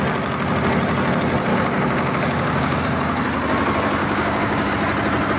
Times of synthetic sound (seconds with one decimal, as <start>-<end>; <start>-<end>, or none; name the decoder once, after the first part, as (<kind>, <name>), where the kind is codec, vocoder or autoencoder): 1.5-2.8 (codec, DAC); 4.0-4.7

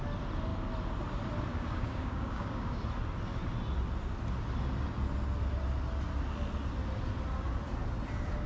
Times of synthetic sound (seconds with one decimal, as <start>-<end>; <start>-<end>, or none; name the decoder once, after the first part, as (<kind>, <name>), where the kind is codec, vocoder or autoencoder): 1.5-2.8 (codec, DAC)

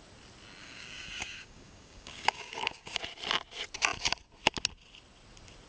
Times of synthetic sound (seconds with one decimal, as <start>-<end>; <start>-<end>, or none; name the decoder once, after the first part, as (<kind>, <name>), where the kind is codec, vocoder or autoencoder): 0.6-3.0 (codec, DAC)

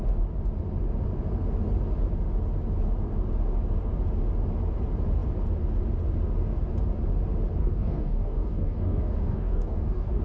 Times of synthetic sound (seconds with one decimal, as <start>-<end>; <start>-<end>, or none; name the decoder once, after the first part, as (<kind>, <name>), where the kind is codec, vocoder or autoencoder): 7.6-10.2 (codec, DAC)